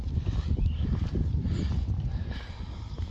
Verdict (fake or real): real